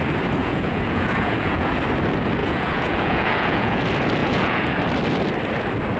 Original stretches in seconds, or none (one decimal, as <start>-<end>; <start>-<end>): 0.0-0.4; 1.7-2.4; 3.8-4.2; 4.8-6.0